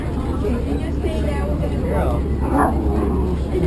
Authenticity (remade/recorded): recorded